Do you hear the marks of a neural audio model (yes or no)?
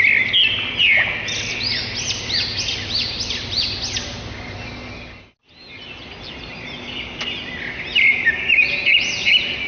no